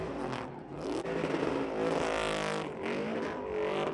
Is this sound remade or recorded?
recorded